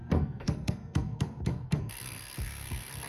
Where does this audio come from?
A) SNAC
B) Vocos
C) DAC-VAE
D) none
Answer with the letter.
A